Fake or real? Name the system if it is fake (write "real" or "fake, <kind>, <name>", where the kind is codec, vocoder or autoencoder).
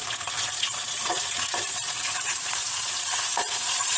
fake, vocoder, Vocos